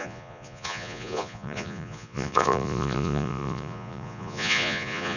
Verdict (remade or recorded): remade